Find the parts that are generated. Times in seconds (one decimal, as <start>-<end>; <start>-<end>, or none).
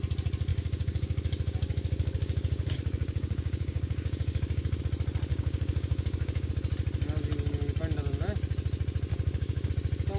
0.5-4.8; 5.3-6.5; 9.1-9.7